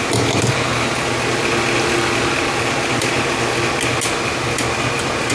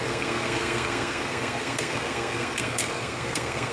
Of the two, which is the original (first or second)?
first